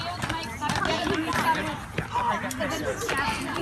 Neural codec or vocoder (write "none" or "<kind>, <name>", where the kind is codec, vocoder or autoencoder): none